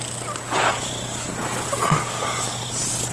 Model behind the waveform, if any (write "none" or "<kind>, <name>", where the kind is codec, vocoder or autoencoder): none